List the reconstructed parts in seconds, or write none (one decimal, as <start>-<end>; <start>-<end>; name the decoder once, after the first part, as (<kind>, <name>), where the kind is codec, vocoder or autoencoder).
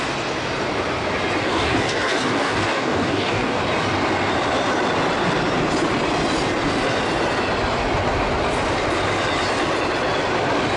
1.4-3.6 (codec, DAC)